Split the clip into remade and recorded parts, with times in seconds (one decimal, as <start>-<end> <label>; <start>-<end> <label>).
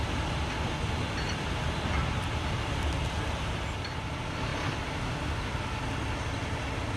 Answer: 0.0-7.0 recorded